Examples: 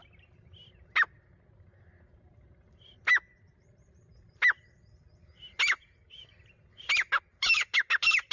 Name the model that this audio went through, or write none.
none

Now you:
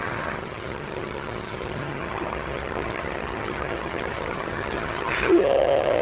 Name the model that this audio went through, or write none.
vocoder, HiFi-GAN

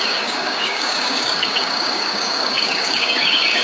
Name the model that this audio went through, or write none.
codec, DAC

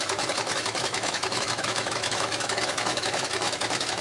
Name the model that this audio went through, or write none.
autoencoder, DAC-VAE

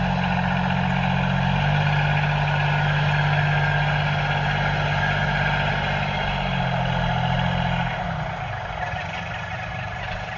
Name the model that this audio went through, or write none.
none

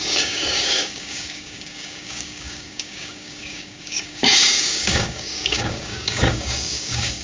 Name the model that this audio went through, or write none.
codec, DAC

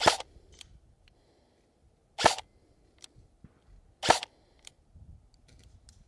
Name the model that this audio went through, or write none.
none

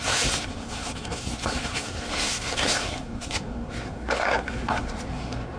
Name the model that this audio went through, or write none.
codec, SNAC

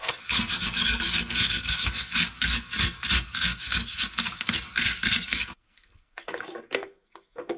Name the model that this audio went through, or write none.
codec, SNAC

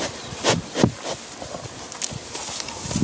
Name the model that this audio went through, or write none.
none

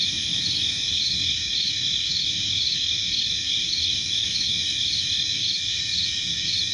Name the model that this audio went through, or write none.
autoencoder, DAC-VAE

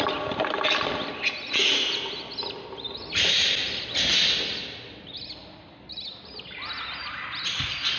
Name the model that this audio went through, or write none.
none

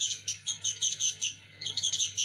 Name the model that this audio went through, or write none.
codec, SNAC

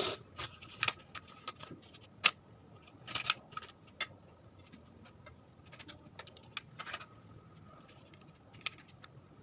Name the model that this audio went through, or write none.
none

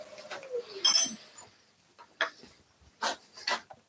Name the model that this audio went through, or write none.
none